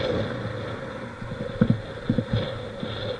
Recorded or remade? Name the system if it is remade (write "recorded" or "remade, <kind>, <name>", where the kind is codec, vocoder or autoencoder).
recorded